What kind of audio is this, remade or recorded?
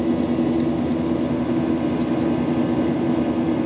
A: recorded